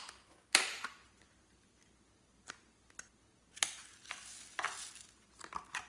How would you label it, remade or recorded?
recorded